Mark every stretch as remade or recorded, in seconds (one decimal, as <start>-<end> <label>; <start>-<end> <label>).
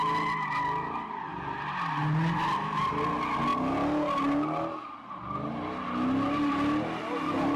0.0-7.6 recorded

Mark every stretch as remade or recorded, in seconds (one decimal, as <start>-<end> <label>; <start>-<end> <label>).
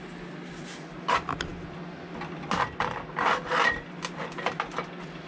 0.0-5.3 recorded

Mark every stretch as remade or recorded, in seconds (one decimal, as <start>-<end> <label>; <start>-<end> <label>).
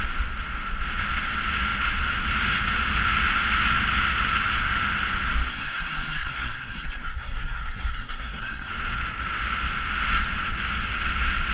0.0-5.5 recorded; 5.5-8.7 remade; 8.7-11.5 recorded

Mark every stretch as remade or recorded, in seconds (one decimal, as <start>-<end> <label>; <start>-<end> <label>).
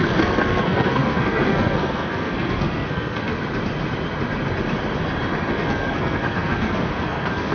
0.0-3.3 remade; 3.3-5.5 recorded; 5.5-7.5 remade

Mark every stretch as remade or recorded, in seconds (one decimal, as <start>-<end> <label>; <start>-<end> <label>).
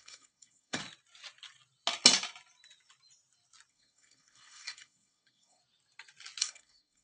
0.0-0.8 remade; 0.8-3.7 recorded; 3.7-5.6 remade; 5.6-6.4 recorded; 6.4-7.0 remade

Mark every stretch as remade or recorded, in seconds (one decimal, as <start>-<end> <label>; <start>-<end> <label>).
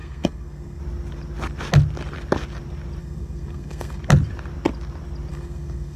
0.0-0.8 remade; 0.8-3.0 recorded; 3.0-4.0 remade; 4.0-5.3 recorded; 5.3-6.0 remade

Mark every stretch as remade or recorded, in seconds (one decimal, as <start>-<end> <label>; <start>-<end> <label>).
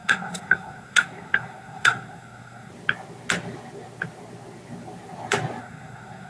0.0-2.7 remade; 2.7-5.6 recorded; 5.6-6.3 remade